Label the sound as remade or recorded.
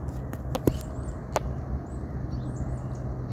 recorded